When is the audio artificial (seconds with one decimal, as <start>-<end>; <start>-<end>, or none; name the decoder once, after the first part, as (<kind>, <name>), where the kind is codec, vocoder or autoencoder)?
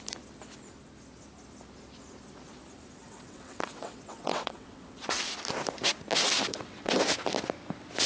3.0-5.2 (vocoder, WaveNeXt); 6.5-7.0